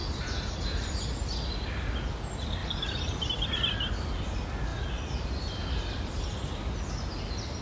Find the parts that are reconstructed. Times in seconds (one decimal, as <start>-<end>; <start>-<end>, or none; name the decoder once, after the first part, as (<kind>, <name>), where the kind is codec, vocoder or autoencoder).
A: 0.0-0.9 (vocoder, BigVGAN v2); 2.6-3.3